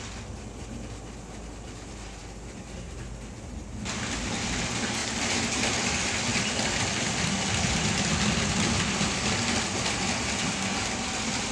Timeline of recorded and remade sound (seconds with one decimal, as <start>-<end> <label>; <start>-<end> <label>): 0.0-5.0 recorded; 5.0-5.8 remade; 5.8-6.3 recorded; 6.3-7.1 remade; 7.1-11.5 recorded